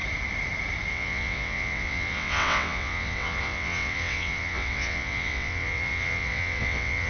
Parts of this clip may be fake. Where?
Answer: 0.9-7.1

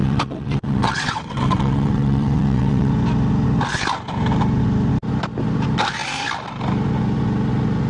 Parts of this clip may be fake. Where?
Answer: 0.0-2.9

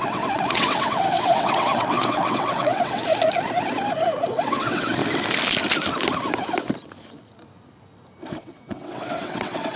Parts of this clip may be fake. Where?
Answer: 0.0-3.0; 4.3-5.0; 8.4-9.8

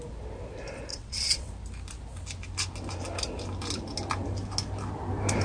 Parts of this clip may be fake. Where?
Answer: 0.9-1.5

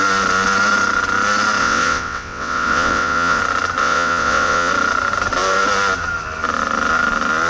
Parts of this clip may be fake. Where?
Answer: 1.6-3.4; 3.8-4.7

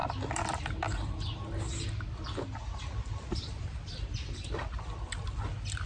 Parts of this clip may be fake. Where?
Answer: none

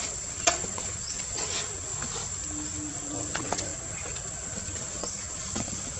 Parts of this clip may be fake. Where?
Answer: 0.0-1.9; 2.9-6.0

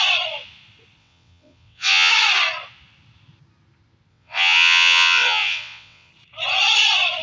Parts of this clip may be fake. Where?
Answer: 1.0-2.1; 4.1-6.1